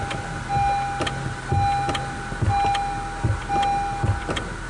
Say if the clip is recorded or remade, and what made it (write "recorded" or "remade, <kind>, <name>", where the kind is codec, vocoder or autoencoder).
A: recorded